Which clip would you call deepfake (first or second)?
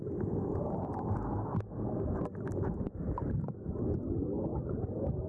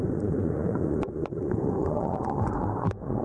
second